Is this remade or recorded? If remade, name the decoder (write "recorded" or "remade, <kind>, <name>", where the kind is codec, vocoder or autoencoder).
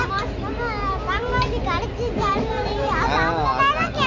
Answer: recorded